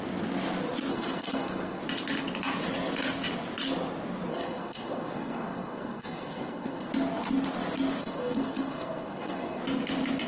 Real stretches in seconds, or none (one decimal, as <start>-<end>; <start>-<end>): 0.0-0.9; 1.8-4.3; 6.9-8.0; 9.6-10.3